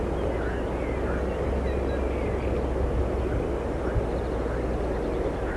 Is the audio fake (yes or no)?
no